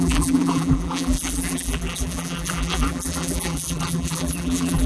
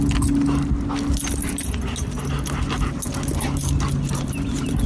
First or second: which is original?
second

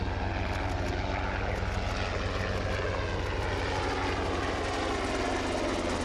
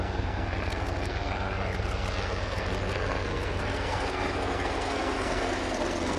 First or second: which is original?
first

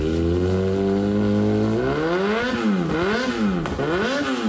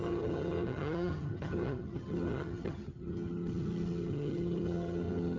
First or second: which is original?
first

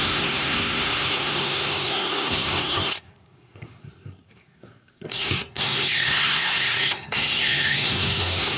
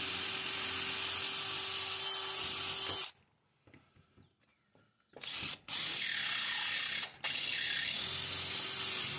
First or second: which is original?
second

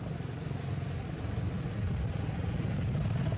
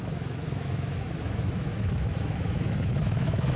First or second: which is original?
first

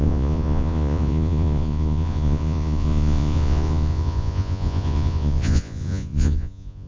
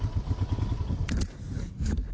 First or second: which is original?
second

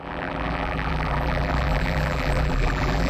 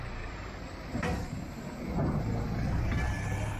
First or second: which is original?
second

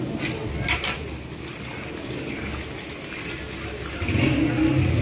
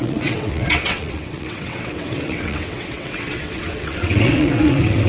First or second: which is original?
first